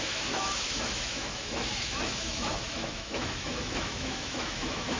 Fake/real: fake